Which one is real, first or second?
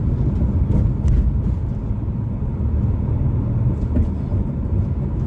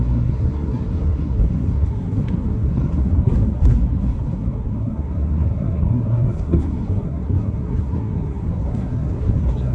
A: first